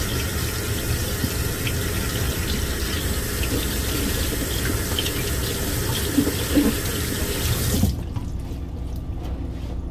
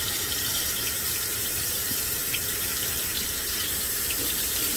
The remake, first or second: second